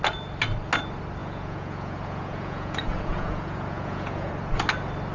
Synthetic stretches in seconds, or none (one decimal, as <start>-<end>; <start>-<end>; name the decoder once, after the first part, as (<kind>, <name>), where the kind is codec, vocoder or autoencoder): 1.2-4.3 (vocoder, Vocos)